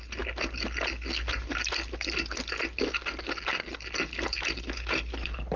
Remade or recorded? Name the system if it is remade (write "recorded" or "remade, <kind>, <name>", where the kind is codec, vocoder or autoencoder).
recorded